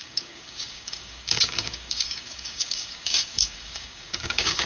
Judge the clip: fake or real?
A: fake